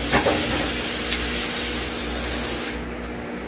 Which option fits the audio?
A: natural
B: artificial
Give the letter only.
A